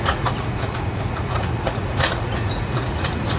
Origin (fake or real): fake